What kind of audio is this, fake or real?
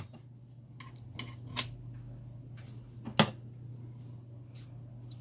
real